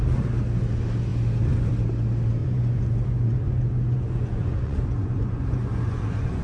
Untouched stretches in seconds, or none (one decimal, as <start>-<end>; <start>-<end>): 0.0-2.4